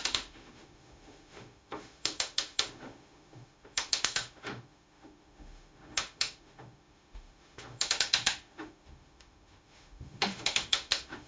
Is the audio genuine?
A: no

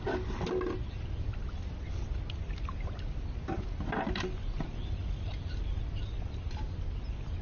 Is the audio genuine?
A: yes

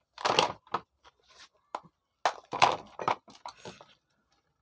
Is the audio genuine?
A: yes